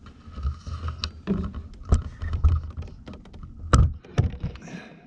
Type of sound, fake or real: real